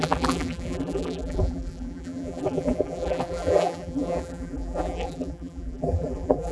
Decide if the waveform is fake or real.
fake